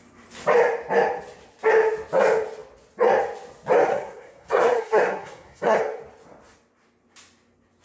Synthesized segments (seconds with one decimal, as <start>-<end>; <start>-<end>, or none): 3.9-5.8